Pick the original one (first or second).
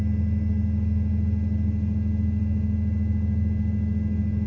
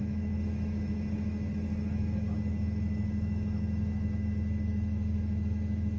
first